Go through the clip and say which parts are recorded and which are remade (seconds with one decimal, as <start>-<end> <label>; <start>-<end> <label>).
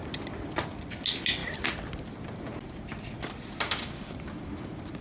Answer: 0.0-5.0 recorded